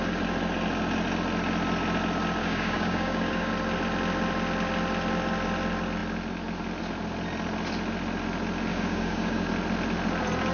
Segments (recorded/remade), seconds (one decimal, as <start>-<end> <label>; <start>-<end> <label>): 0.0-2.4 recorded; 2.4-3.5 remade; 3.5-8.7 recorded; 8.7-9.5 remade; 9.5-10.5 recorded